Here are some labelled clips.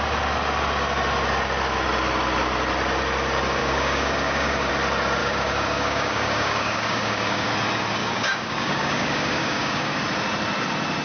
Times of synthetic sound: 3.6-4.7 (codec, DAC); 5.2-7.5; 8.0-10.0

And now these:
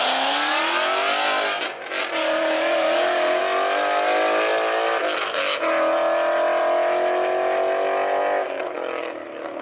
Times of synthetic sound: 2.2-3.4 (codec, DAC)

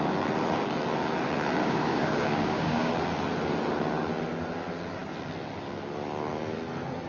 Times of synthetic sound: 1.6-2.9 (codec, DAC)

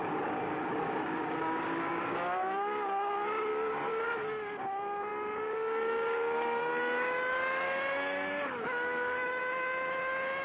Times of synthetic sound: 0.0-9.4 (codec, DAC)

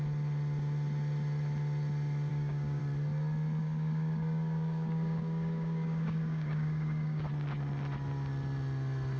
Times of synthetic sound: 2.3-2.8 (codec, DAC); 3.6-7.3

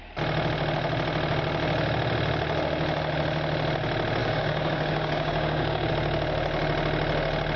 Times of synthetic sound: 4.2-5.9 (codec, DAC)

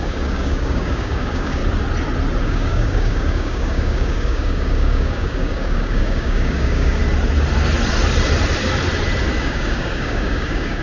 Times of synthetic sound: 0.0-1.6 (codec, DAC); 2.4-7.0; 9.4-10.8

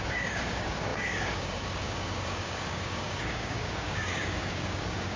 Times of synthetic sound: 0.0-5.2 (codec, DAC)